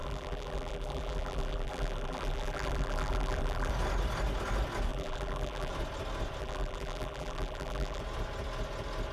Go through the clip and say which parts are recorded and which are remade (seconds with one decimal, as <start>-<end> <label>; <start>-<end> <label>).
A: 0.0-3.7 remade; 3.7-4.9 recorded; 4.9-5.7 remade; 5.7-6.4 recorded; 6.4-8.0 remade; 8.0-9.1 recorded